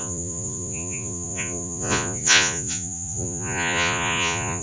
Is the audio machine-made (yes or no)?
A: yes